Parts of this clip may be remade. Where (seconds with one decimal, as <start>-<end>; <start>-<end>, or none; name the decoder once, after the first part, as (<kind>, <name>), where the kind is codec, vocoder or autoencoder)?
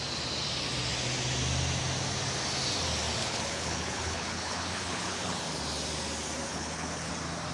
3.2-5.4 (codec, HILCodec); 6.5-7.1